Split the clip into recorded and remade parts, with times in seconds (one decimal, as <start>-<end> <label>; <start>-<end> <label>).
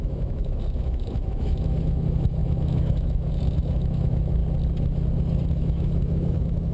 0.0-4.4 remade; 4.4-5.5 recorded; 5.5-6.7 remade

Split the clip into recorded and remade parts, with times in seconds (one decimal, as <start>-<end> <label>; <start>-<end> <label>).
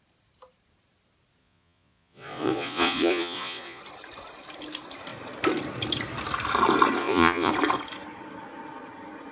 0.0-1.4 recorded; 1.4-3.8 remade; 3.8-7.0 recorded; 7.0-7.5 remade; 7.5-9.3 recorded